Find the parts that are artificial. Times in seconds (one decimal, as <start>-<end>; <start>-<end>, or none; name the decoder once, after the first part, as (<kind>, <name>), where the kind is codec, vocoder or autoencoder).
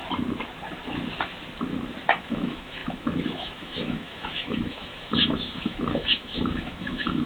2.2-7.3 (autoencoder, DAC-VAE)